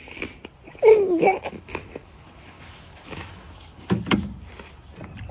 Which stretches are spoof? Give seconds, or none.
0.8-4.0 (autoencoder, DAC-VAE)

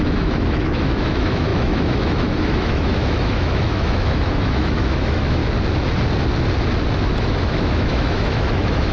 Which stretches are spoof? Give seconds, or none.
0.0-5.4 (autoencoder, DAC-VAE); 7.2-8.9